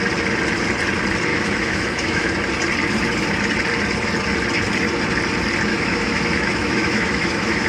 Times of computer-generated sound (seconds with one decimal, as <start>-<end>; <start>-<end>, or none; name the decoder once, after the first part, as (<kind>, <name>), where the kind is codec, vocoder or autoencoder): 1.3-2.3 (autoencoder, DAC-VAE); 5.7-7.7